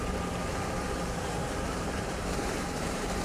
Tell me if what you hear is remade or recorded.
remade